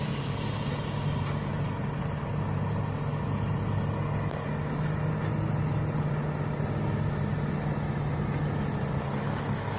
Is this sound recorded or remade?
recorded